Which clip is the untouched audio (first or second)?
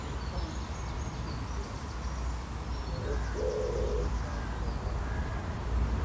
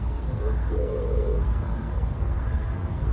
first